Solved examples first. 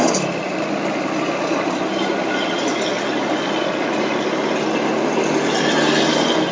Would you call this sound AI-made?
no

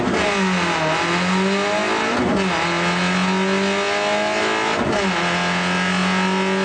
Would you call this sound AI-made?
no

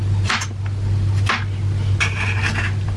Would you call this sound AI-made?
no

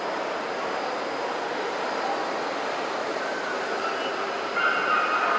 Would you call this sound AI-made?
no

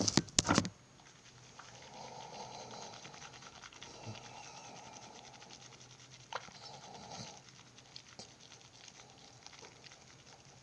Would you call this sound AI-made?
no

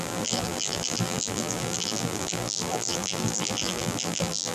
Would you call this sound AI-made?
yes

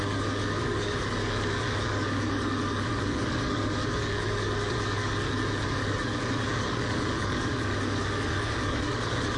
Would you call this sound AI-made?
yes